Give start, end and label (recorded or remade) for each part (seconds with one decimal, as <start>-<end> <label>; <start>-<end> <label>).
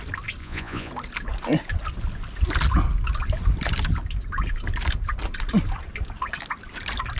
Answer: 0.0-0.4 recorded; 0.4-0.9 remade; 0.9-7.2 recorded